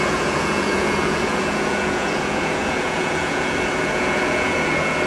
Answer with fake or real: fake